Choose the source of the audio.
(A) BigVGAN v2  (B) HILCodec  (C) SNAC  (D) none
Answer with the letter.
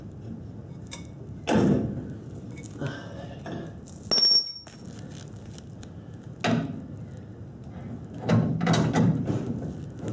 D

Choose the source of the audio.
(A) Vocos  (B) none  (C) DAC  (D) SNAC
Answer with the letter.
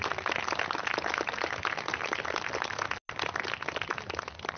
B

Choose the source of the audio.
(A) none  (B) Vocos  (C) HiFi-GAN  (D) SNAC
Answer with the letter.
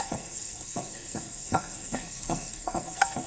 D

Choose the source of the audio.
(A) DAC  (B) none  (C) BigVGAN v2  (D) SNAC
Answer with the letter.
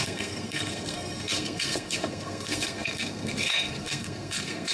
D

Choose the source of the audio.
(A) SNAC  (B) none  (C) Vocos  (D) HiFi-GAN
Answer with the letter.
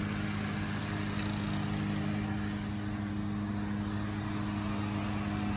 B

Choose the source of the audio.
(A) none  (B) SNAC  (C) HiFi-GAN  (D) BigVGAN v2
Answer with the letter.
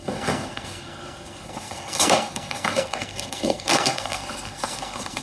B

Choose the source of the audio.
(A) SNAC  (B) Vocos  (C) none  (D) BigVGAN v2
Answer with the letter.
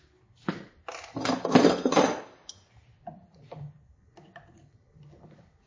C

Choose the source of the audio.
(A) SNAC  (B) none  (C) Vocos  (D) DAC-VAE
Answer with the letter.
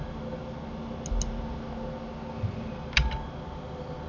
B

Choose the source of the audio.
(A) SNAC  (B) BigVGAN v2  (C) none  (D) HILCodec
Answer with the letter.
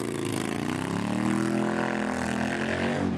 C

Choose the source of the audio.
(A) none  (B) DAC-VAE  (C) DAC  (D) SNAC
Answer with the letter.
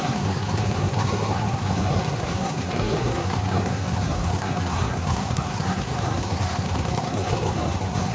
D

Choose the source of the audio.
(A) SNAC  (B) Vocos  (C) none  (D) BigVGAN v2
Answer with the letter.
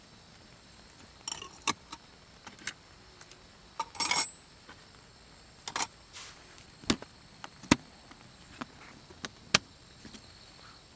C